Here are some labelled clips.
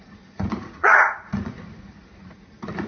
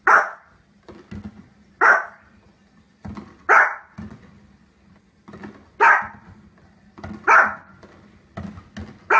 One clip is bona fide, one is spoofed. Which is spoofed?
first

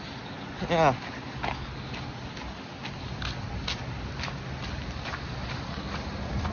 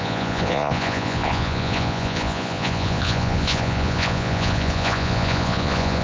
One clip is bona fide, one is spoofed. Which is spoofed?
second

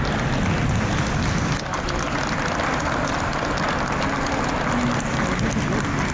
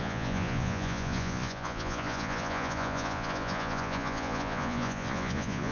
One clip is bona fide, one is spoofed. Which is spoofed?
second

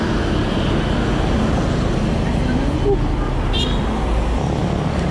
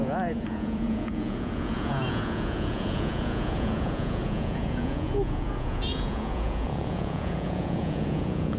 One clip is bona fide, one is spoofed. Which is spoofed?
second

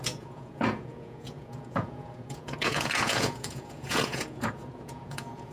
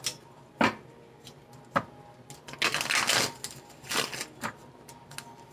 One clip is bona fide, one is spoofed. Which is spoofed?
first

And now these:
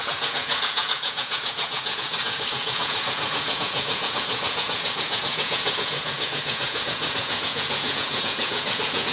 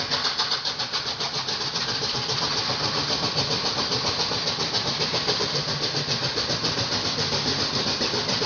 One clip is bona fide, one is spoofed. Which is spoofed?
first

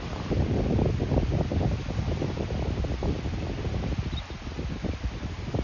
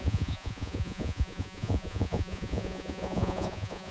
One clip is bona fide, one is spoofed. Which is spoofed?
second